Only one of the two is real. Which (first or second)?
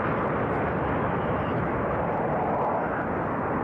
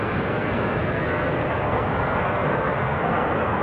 first